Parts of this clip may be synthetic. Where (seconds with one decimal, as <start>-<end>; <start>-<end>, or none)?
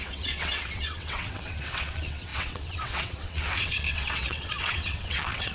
0.0-5.5